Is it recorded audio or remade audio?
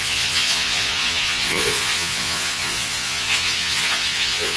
remade